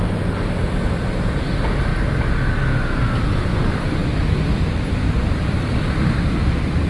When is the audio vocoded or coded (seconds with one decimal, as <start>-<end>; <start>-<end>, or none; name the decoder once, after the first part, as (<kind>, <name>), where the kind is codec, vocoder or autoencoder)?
0.0-1.9 (vocoder, BigVGAN v2); 3.2-4.0; 4.7-6.9